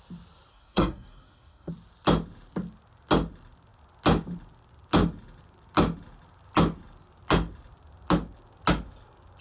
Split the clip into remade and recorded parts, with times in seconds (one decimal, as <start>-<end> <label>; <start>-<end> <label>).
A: 0.0-0.5 recorded; 0.5-1.7 remade; 1.7-9.4 recorded